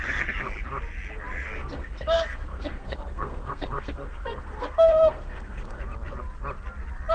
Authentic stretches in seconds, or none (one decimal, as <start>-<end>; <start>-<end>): 0.0-1.6; 5.8-7.1